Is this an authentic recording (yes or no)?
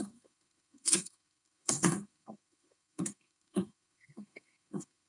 no